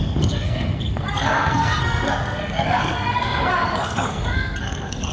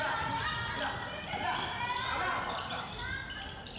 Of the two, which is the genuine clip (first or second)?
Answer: second